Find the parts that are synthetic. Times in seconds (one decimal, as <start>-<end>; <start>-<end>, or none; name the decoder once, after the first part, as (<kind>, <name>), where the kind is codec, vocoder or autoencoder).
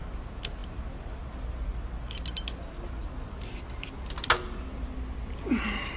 none